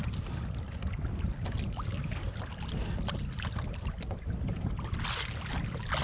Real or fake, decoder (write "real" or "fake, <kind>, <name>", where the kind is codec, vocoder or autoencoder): real